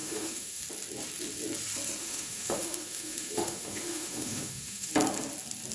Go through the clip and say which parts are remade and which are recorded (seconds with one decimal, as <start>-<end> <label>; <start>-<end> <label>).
0.0-0.6 remade; 0.6-2.0 recorded; 2.0-4.9 remade; 4.9-5.7 recorded